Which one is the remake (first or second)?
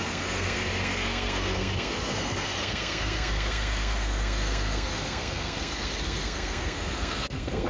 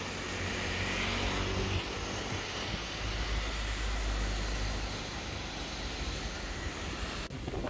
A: first